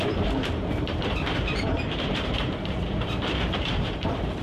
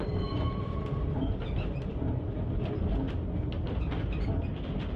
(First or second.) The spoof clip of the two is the first